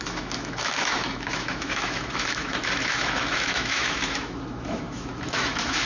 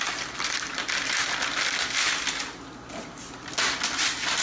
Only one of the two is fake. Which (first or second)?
first